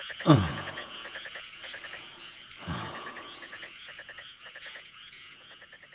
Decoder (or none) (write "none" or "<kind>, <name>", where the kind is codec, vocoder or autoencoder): vocoder, Vocos